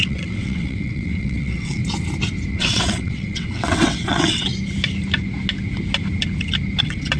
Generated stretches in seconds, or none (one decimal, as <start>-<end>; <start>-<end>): 0.0-1.8; 2.5-4.5; 6.8-7.2